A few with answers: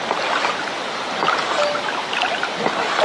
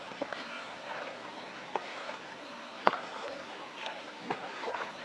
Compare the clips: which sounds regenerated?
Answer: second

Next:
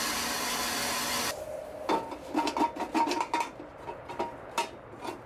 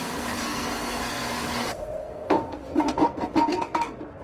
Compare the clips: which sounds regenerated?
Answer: second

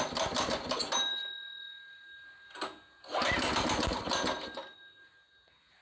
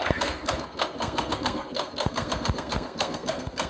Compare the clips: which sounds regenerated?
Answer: second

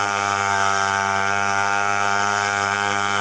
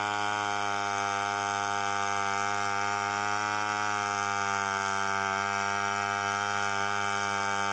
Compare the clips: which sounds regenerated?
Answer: first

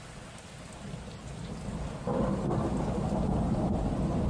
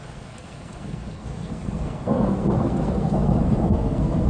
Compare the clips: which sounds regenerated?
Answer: second